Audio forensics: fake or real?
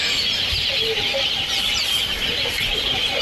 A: real